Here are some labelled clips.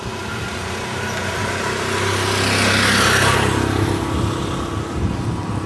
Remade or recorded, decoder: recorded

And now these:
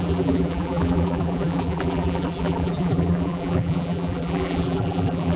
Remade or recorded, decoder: remade, vocoder, BigVGAN v2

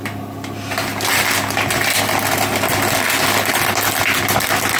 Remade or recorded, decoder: recorded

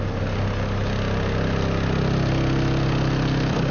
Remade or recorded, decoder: recorded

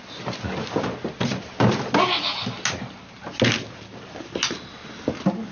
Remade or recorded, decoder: recorded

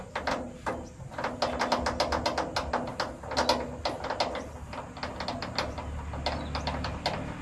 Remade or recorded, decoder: recorded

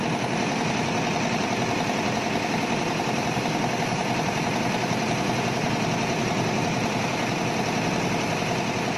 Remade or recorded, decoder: recorded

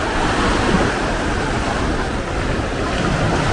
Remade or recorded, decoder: recorded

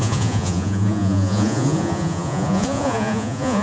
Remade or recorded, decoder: remade, vocoder, Vocos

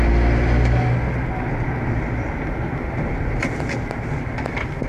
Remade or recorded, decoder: recorded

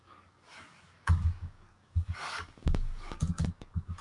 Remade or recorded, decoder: remade, codec, DAC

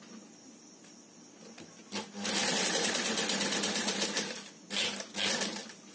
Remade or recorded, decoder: recorded